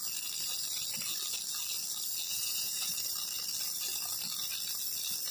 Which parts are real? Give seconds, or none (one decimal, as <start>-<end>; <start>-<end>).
0.0-2.3; 2.9-5.3